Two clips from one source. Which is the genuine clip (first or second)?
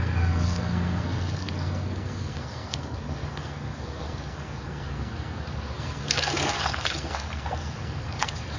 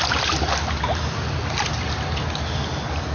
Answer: second